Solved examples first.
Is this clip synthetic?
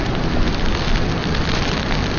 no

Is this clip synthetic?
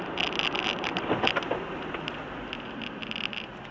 no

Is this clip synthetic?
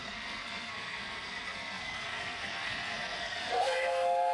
yes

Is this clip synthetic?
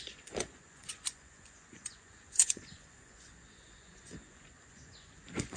yes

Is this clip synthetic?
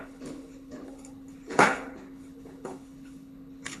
yes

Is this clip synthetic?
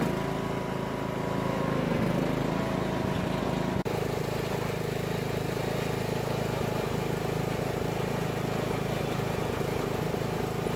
no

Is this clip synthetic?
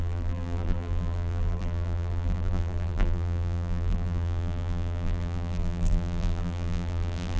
yes